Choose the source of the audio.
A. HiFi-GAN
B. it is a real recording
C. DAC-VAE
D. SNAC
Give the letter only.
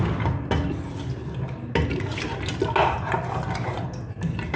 B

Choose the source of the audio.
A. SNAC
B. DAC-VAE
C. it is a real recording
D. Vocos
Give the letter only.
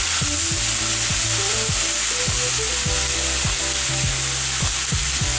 C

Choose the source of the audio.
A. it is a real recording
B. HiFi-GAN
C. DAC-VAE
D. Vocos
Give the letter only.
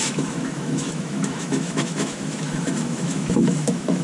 C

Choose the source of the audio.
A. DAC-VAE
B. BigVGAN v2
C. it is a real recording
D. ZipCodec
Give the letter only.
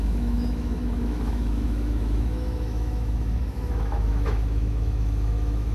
A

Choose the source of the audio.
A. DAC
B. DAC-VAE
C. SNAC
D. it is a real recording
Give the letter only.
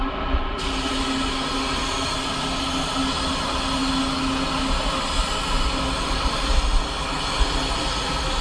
D